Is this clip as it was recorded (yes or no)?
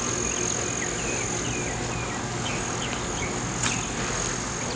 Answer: yes